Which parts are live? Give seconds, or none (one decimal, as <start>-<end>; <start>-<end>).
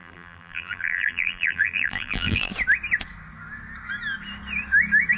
2.5-5.2